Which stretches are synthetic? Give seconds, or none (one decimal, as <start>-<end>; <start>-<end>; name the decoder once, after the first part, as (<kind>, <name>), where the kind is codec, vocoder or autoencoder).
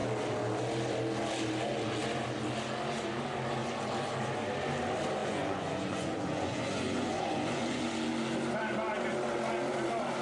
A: 5.2-7.8 (vocoder, Vocos)